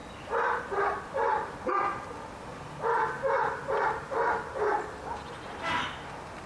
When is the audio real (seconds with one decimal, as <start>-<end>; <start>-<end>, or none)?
0.0-6.5